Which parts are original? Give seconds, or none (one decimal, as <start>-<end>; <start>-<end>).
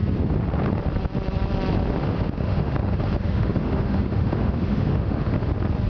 0.0-2.0; 5.5-5.9